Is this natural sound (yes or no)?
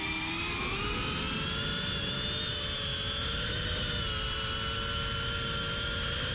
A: yes